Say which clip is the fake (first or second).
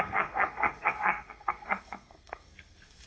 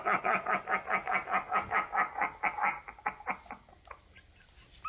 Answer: first